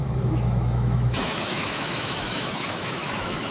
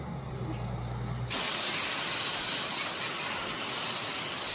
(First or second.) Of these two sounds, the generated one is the first